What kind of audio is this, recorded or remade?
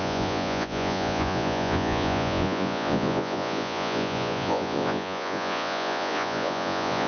remade